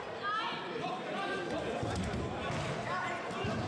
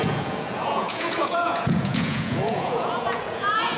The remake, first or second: second